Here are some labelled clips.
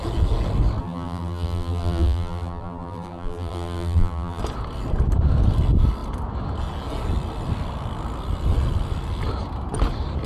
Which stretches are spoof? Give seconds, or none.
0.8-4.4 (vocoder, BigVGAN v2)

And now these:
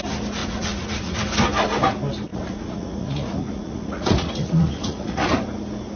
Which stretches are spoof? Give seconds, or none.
0.4-1.2 (vocoder, Vocos); 2.3-5.3

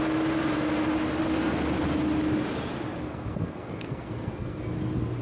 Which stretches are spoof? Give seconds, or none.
3.0-4.6 (codec, SNAC)